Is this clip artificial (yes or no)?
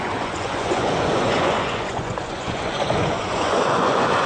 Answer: yes